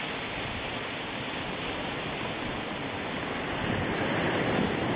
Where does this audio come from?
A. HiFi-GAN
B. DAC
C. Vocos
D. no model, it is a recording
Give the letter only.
D